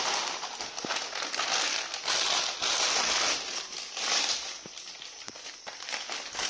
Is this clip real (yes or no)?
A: yes